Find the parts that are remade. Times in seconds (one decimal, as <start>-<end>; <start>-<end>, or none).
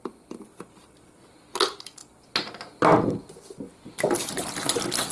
none